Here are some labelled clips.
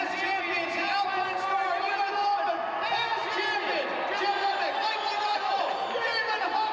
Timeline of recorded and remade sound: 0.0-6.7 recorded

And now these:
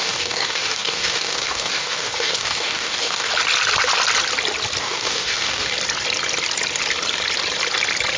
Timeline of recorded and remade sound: 0.0-3.3 remade; 3.3-4.8 recorded; 4.8-5.7 remade; 5.7-8.2 recorded

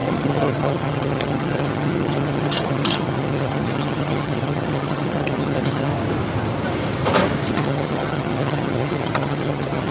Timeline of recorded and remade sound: 0.0-5.9 remade; 5.9-7.5 recorded; 7.5-9.9 remade